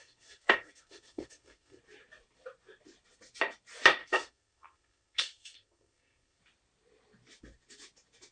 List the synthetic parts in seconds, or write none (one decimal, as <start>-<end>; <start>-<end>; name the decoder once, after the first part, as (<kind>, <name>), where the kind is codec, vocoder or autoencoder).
0.0-1.8 (codec, SNAC); 4.0-6.4